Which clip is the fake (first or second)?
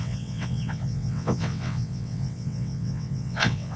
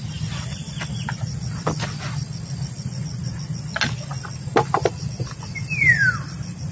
first